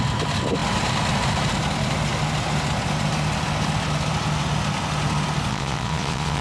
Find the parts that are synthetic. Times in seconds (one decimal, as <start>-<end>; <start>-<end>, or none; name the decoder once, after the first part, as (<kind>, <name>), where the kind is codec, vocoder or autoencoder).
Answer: 5.5-6.4 (vocoder, Vocos)